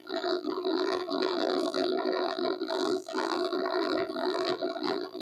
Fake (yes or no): yes